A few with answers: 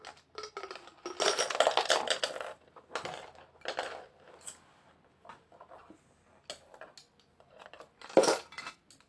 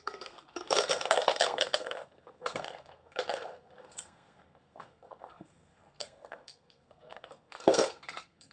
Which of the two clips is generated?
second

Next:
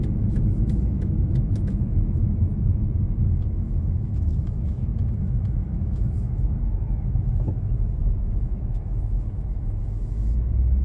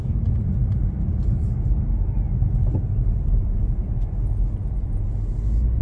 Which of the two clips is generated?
first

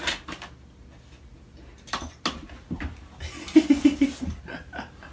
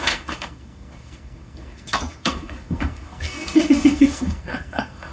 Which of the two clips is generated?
second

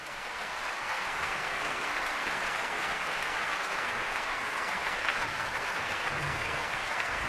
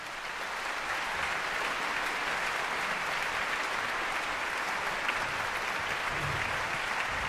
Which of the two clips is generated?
first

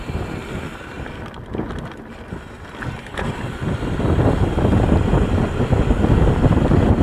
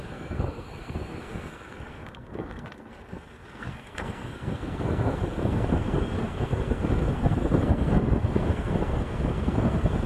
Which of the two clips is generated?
second